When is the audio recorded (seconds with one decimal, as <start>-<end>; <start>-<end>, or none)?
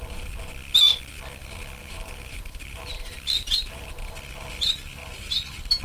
0.0-1.8; 3.9-5.0